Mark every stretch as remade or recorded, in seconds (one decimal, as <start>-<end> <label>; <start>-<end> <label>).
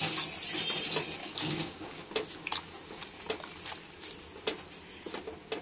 0.0-1.2 recorded; 1.2-2.1 remade; 2.1-5.6 recorded